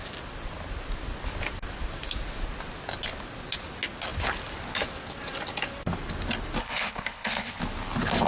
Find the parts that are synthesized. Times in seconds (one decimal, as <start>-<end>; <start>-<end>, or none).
6.6-7.6